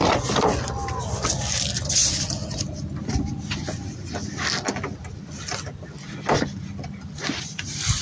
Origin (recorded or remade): recorded